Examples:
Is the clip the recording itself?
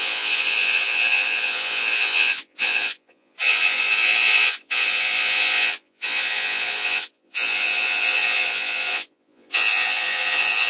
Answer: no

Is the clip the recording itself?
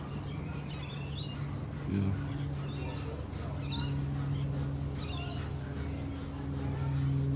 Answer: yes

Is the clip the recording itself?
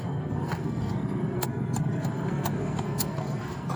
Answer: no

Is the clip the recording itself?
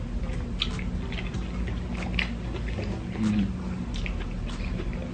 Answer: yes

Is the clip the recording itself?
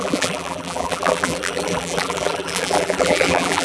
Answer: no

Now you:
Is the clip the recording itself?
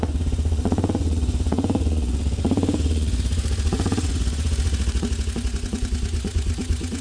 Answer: no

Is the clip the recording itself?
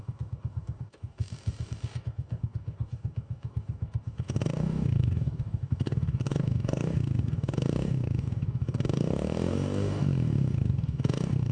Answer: no